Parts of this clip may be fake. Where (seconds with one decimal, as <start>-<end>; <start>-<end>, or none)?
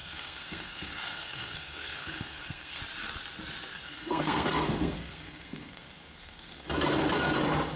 0.0-2.8; 3.7-6.7